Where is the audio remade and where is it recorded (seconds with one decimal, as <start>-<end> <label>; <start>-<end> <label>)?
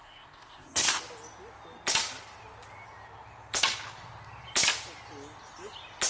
0.0-1.0 remade; 1.0-6.1 recorded